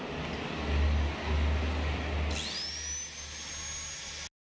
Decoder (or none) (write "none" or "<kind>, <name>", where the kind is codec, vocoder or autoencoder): none